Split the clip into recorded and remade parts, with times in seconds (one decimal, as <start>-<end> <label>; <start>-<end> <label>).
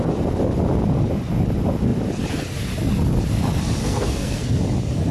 0.0-3.8 recorded; 3.8-4.6 remade; 4.6-5.1 recorded